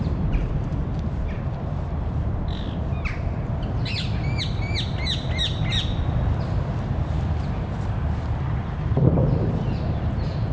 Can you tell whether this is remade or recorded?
recorded